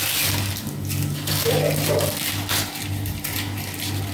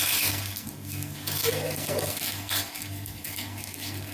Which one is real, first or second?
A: first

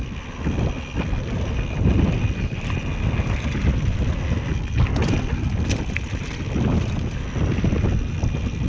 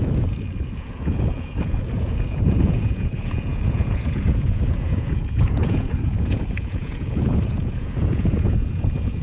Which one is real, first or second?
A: first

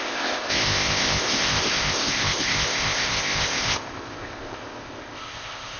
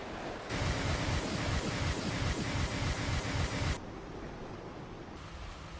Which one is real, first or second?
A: second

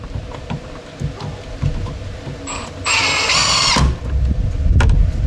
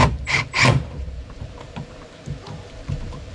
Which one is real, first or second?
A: first